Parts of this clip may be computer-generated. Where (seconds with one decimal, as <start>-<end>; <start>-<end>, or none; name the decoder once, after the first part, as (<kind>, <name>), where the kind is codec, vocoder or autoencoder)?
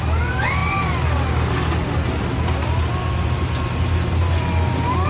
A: none